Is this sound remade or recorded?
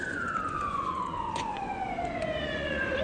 remade